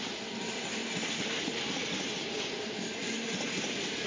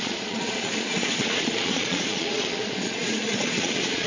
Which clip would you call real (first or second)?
first